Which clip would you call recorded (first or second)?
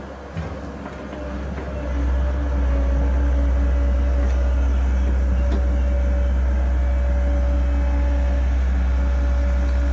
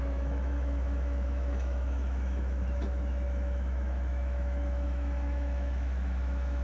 first